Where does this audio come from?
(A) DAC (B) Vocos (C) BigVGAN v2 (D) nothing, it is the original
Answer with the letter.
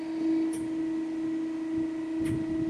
D